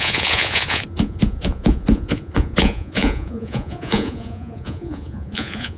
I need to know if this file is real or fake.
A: fake